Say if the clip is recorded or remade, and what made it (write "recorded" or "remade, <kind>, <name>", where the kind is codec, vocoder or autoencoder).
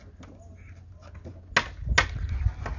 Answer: recorded